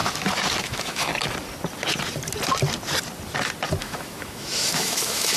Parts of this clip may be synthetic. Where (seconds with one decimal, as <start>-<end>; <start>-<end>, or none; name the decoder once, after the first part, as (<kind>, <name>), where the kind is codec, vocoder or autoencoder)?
0.6-1.1 (autoencoder, DAC-VAE); 3.8-5.4